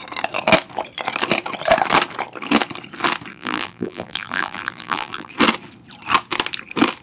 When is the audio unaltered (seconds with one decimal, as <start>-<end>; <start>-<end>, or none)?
0.0-3.3; 5.3-7.0